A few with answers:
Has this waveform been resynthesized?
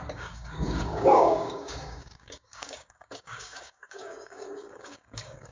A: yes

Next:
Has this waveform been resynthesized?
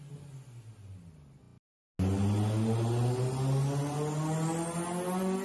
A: no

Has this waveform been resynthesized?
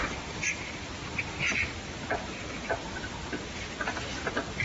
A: no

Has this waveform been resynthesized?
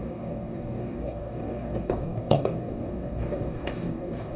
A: yes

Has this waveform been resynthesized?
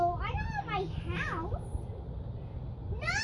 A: no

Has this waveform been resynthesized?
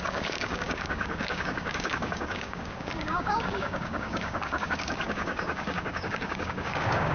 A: yes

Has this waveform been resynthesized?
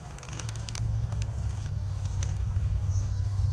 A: yes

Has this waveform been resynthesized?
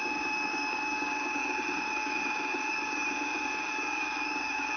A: yes